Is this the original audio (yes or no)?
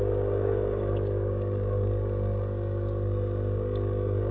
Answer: no